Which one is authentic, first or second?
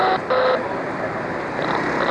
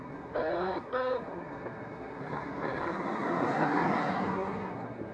first